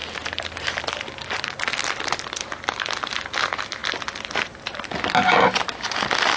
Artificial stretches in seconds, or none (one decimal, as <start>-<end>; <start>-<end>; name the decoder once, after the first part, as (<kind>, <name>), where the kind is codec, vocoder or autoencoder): 0.0-0.8 (vocoder, BigVGAN v2)